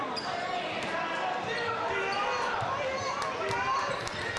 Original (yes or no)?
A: yes